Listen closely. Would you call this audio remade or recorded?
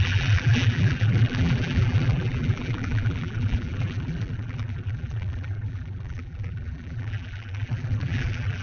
remade